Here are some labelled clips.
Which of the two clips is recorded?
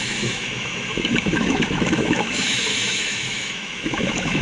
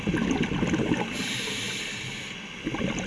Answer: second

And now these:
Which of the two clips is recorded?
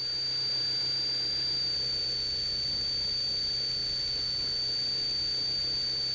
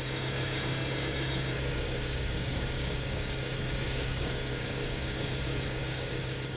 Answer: first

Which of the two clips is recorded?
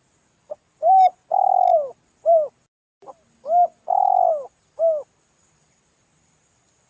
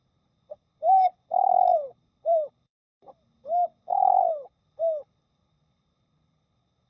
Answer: first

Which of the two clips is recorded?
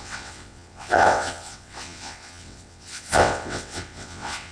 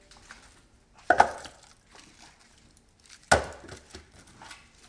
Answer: second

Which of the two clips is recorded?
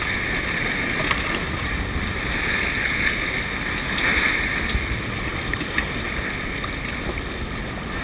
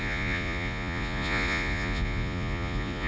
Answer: first